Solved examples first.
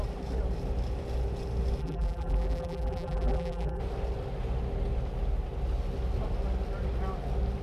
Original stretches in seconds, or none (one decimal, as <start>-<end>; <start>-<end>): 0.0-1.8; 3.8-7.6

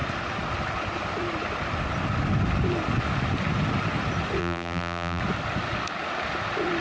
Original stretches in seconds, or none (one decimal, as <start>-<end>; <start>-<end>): 0.0-4.4; 5.2-6.8

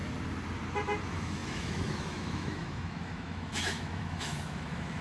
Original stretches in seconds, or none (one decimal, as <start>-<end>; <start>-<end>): 0.0-1.0

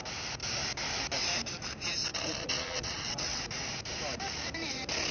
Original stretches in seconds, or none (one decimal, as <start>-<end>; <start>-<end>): 0.0-2.1; 3.4-5.1

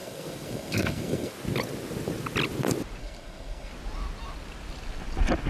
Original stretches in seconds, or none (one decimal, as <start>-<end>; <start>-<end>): 1.3-3.0; 3.7-5.5